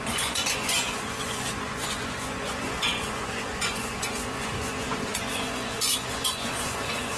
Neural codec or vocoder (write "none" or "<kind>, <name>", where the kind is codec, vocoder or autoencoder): vocoder, Vocos